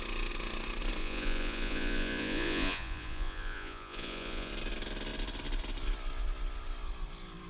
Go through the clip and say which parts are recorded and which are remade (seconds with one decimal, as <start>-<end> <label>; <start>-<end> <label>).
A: 0.0-1.0 recorded; 1.0-4.5 remade; 4.5-7.5 recorded